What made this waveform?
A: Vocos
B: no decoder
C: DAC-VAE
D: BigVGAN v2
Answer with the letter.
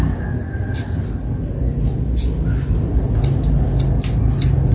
B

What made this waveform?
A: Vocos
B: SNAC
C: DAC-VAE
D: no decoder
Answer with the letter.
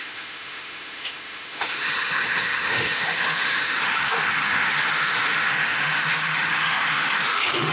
C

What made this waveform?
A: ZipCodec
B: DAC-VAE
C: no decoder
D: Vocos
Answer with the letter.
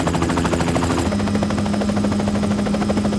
C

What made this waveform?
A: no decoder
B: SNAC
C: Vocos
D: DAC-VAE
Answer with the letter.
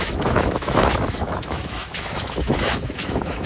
D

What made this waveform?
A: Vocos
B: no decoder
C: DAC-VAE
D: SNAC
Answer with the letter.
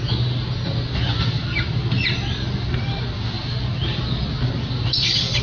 B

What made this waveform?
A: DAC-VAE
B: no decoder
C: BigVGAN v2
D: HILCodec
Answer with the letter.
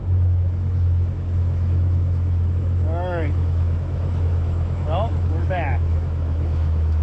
A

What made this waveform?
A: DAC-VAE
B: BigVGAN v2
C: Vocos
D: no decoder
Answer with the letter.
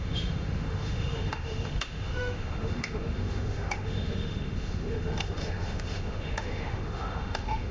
A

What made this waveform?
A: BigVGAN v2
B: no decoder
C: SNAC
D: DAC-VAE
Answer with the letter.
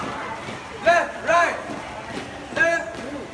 B